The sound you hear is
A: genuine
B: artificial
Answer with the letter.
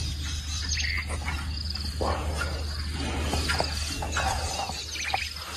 A